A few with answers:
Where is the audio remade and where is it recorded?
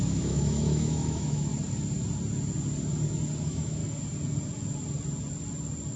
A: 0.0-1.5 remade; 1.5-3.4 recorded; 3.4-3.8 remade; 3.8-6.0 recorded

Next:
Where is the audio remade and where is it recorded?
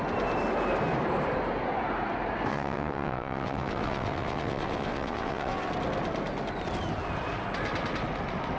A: 0.0-2.5 recorded; 2.5-5.7 remade; 5.7-8.6 recorded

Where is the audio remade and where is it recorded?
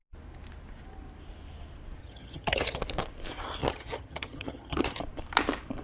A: 0.0-2.0 recorded; 2.0-2.8 remade; 2.8-3.6 recorded; 3.6-5.0 remade; 5.0-5.8 recorded